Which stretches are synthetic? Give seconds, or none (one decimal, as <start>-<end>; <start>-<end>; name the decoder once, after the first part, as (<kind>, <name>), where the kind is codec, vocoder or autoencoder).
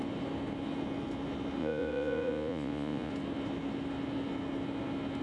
1.6-3.1 (vocoder, Vocos)